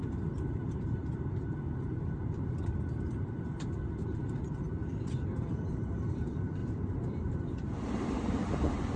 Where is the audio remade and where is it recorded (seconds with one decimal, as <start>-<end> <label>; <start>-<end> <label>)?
0.0-9.0 remade